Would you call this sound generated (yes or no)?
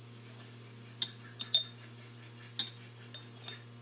no